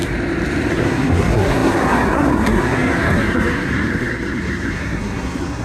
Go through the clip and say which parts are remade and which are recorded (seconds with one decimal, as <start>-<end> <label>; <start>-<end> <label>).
0.0-0.7 recorded; 0.7-5.6 remade